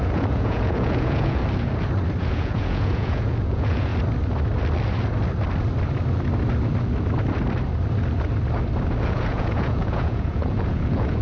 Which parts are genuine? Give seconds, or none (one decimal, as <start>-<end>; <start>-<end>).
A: 1.4-2.2; 3.9-9.0

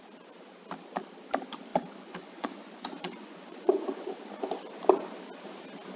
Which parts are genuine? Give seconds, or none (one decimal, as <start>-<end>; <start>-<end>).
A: 0.0-1.7; 4.5-6.0

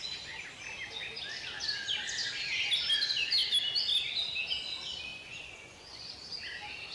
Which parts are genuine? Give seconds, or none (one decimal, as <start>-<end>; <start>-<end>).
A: 0.0-5.1; 6.1-6.9

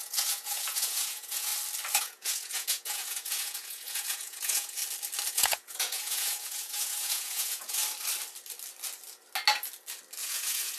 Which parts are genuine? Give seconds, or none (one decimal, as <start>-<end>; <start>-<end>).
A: 1.5-2.0; 4.8-5.3; 7.8-10.2

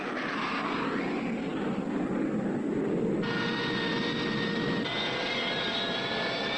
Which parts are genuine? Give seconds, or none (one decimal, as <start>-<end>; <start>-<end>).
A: 0.0-6.6

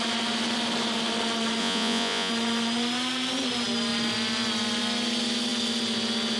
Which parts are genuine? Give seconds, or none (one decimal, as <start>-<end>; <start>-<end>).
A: 0.0-1.6; 2.3-6.4